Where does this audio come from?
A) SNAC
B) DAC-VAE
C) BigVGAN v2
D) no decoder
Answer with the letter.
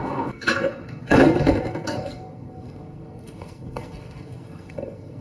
A